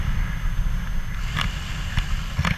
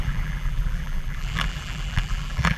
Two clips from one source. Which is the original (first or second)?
first